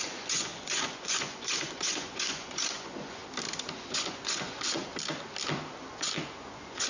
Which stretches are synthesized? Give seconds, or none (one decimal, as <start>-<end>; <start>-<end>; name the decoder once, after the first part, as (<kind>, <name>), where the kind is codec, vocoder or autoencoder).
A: 0.0-3.2 (vocoder, Vocos); 3.8-4.9; 5.8-6.9